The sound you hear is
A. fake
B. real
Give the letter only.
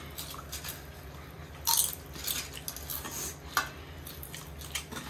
B